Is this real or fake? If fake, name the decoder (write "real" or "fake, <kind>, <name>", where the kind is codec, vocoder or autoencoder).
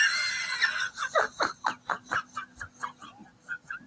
real